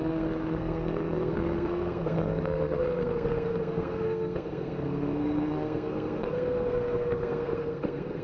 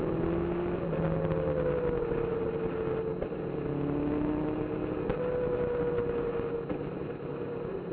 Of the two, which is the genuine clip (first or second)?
second